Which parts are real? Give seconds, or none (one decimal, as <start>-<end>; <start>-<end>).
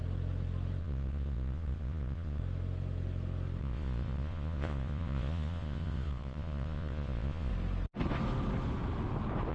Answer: 0.0-0.8; 2.4-3.6; 7.5-9.5